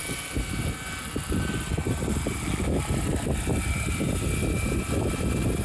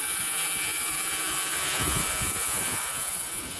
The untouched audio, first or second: first